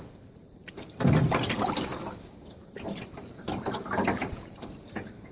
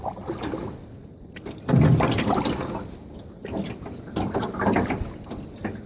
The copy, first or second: first